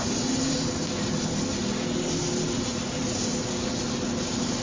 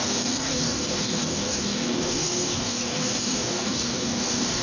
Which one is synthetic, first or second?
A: second